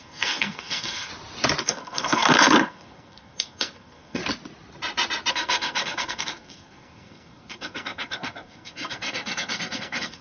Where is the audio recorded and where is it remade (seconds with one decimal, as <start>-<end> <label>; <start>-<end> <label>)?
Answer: 0.0-1.1 remade; 1.1-1.6 recorded; 1.6-4.2 remade; 4.2-5.3 recorded; 5.3-10.2 remade

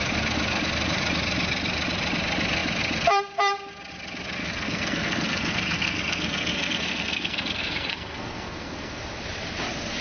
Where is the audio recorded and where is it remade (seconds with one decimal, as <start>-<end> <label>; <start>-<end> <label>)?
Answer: 0.0-4.4 recorded; 4.4-9.0 remade; 9.0-10.0 recorded